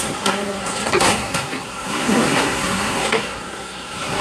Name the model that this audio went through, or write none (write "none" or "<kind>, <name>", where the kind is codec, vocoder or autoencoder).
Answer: codec, SNAC